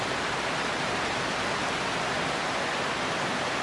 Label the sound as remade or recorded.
recorded